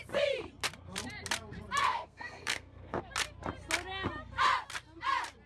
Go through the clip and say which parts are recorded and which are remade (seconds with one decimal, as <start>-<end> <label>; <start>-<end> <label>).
0.0-1.8 recorded; 1.8-3.0 remade; 3.0-5.5 recorded